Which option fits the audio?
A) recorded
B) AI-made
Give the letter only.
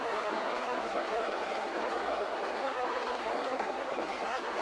B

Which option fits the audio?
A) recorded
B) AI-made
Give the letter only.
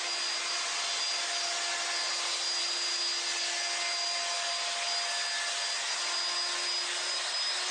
A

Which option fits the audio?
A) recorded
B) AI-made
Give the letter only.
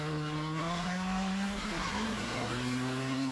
B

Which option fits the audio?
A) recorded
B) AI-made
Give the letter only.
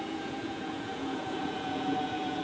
B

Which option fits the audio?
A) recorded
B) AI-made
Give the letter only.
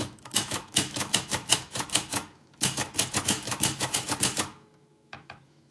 B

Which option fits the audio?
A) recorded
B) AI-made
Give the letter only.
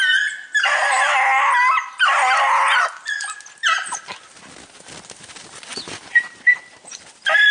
A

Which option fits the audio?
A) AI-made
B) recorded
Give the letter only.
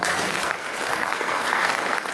A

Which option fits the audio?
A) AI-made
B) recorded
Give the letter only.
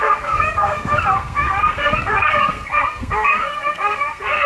A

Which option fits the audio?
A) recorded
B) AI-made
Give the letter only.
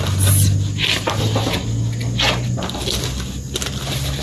A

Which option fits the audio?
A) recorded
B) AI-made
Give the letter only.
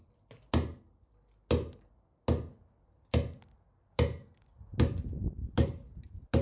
A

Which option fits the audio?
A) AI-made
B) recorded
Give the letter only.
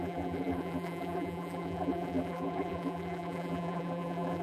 A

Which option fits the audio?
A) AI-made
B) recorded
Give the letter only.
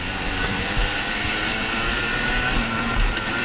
A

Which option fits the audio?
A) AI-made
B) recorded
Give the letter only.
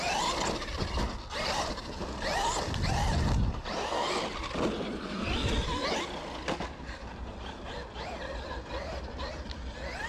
B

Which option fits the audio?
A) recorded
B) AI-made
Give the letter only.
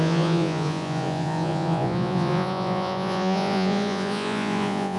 B